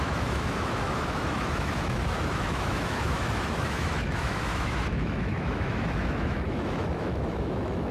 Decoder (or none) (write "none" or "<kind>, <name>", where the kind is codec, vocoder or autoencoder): autoencoder, DAC-VAE